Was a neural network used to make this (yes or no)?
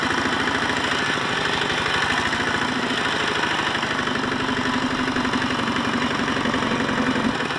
no